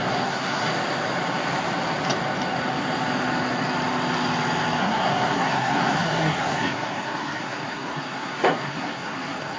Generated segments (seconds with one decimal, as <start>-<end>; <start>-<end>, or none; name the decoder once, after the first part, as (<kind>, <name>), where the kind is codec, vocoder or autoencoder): 0.0-0.7 (codec, SNAC); 4.8-9.6